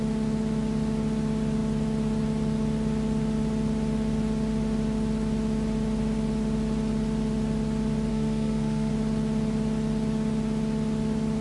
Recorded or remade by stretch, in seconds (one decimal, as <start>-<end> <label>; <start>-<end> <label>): 0.0-8.1 recorded; 8.1-8.9 remade; 8.9-11.4 recorded

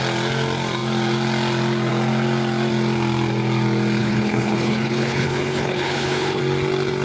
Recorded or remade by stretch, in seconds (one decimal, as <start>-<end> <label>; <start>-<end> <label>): 0.0-4.0 recorded; 4.0-6.4 remade; 6.4-7.0 recorded

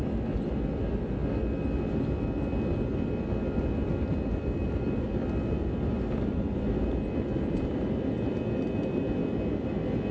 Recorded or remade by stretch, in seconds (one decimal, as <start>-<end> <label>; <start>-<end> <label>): 0.0-10.1 recorded

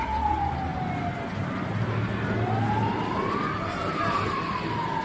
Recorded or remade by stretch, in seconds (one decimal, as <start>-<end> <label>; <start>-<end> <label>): 0.0-5.0 recorded

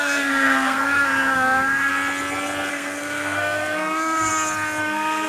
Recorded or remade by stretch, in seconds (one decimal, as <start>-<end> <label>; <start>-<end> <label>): 0.0-1.9 remade; 1.9-2.7 recorded; 2.7-4.3 remade; 4.3-4.8 recorded; 4.8-5.3 remade

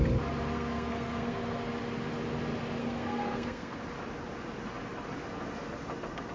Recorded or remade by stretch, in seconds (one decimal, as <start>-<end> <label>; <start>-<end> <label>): 0.0-0.5 recorded; 0.5-1.6 remade; 1.6-2.8 recorded; 2.8-3.8 remade; 3.8-6.3 recorded